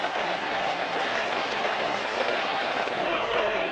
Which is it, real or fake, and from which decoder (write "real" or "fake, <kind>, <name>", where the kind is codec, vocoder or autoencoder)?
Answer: fake, codec, SNAC